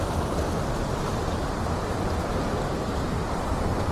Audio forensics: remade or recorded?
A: recorded